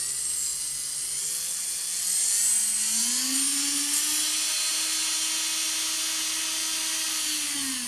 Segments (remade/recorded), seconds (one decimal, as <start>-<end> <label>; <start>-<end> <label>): 0.0-7.9 recorded

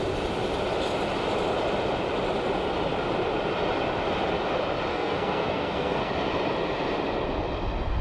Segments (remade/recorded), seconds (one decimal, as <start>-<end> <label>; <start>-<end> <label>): 0.0-4.9 recorded; 4.9-6.1 remade; 6.1-8.0 recorded

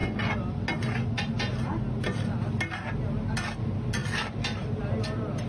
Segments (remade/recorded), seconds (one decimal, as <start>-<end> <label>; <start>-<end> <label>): 0.0-5.5 recorded

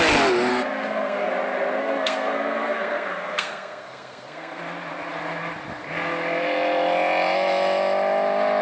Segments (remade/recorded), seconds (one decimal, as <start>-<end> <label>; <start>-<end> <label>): 0.0-0.5 recorded; 0.5-1.3 remade; 1.3-1.8 recorded; 1.8-4.6 remade; 4.6-8.6 recorded